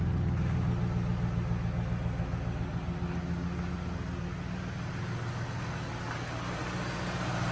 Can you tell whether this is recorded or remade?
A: recorded